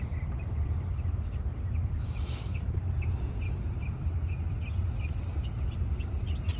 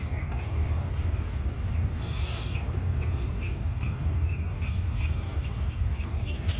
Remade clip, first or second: second